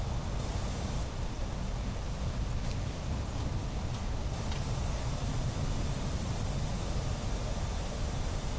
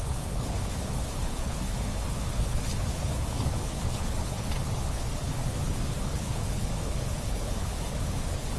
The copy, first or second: second